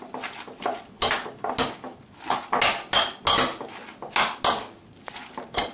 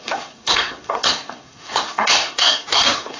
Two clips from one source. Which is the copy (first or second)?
second